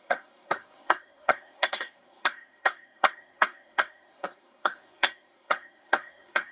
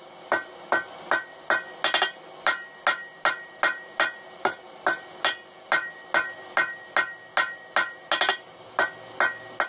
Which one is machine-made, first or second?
first